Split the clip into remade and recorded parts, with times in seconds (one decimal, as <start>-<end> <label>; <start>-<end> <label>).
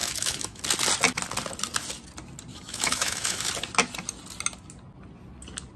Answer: 0.0-0.6 remade; 0.6-2.5 recorded; 2.5-3.5 remade; 3.5-5.8 recorded